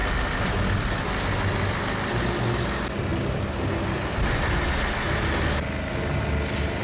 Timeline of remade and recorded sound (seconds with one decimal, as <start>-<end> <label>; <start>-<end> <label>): 0.0-6.8 recorded